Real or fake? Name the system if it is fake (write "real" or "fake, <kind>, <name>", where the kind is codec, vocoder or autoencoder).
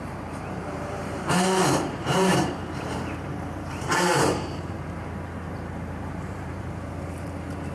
fake, vocoder, BigVGAN v2